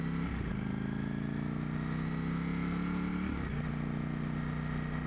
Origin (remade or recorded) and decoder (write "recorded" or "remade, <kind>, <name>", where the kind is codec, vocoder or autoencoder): recorded